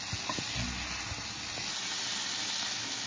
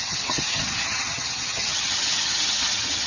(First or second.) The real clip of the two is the first